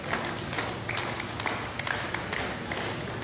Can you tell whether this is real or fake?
real